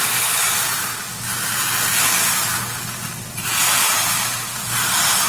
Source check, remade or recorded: recorded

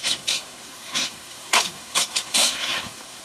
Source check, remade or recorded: remade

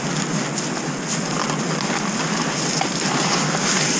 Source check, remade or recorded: recorded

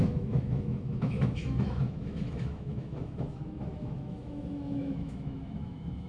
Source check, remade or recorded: remade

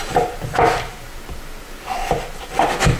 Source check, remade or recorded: recorded